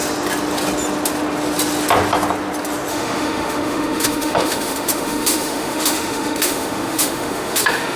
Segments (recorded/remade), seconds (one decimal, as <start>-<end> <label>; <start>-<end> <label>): 0.0-2.9 recorded; 2.9-8.0 remade

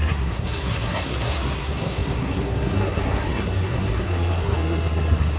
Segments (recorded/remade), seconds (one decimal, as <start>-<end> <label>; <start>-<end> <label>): 0.0-5.4 remade

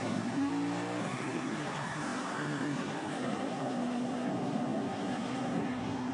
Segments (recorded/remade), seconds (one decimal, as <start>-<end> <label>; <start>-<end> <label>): 0.0-0.5 remade; 0.5-1.0 recorded; 1.0-6.1 remade

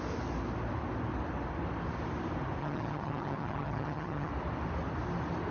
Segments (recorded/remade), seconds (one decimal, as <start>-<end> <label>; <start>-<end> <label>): 0.0-2.6 recorded; 2.6-4.3 remade; 4.3-5.5 recorded

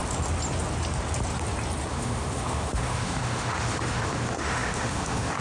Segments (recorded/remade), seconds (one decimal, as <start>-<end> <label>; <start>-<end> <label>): 0.0-1.9 recorded; 1.9-5.4 remade

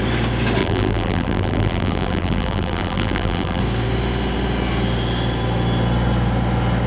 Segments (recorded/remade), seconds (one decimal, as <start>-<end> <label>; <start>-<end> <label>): 0.0-0.6 recorded; 0.6-3.6 remade; 3.6-6.9 recorded